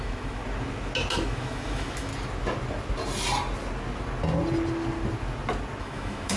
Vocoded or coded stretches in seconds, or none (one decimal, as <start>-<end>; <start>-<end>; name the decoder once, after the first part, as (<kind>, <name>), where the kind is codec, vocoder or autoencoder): 0.0-0.4 (autoencoder, DAC-VAE); 1.1-2.1; 5.8-6.4